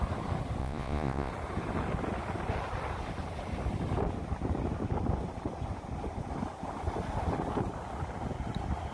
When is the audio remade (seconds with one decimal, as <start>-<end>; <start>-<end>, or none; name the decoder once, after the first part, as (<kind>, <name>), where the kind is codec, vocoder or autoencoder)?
0.6-1.3 (vocoder, Vocos)